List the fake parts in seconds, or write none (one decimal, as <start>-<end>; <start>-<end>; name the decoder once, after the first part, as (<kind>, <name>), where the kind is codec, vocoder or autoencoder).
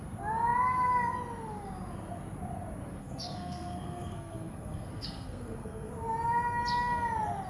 3.0-5.9 (codec, SNAC)